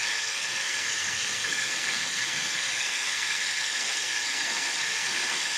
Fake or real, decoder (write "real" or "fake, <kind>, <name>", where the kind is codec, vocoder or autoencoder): fake, codec, SNAC